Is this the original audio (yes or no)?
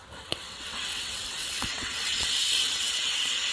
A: no